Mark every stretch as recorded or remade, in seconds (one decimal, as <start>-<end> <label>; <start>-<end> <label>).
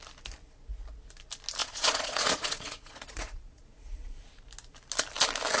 0.0-1.6 recorded; 1.6-4.4 remade; 4.4-5.6 recorded